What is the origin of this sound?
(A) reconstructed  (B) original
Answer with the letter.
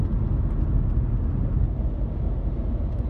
B